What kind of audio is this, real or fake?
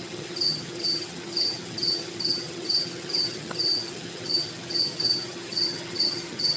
fake